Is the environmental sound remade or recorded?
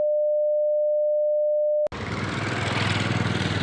recorded